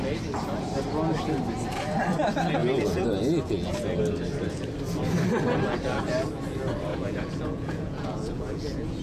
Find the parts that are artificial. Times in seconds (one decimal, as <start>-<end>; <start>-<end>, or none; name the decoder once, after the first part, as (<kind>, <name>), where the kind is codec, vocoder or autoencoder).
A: 2.6-3.7 (vocoder, Vocos); 6.9-9.0